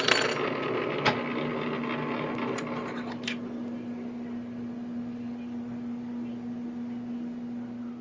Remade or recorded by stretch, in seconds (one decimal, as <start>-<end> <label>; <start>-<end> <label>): 0.0-8.0 recorded